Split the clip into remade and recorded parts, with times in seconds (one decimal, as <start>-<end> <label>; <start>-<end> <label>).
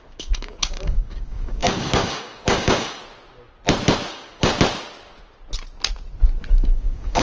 0.0-3.0 remade; 3.0-4.1 recorded; 4.1-4.5 remade; 4.5-6.5 recorded; 6.5-7.2 remade